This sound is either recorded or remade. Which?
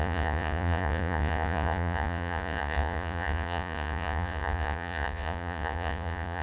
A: remade